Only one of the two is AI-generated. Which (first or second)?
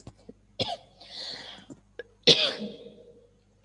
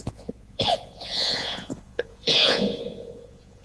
second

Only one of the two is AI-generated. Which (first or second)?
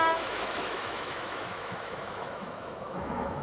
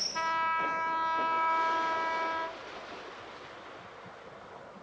first